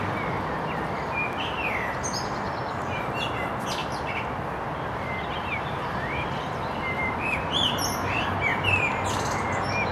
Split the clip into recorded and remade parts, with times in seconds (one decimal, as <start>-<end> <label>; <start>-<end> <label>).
0.0-3.8 recorded; 3.8-6.8 remade; 6.8-8.5 recorded; 8.5-9.1 remade; 9.1-9.9 recorded